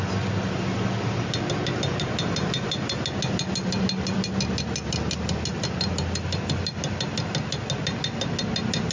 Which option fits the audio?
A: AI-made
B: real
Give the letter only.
B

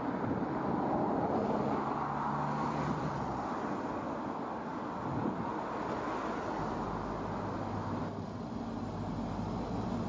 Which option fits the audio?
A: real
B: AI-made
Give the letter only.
A